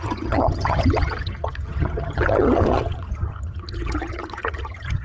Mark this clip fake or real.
fake